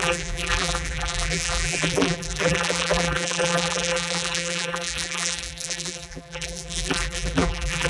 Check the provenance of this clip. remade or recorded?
remade